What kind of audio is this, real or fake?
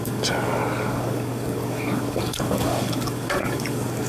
fake